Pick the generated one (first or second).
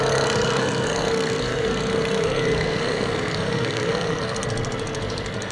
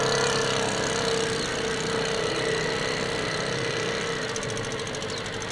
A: first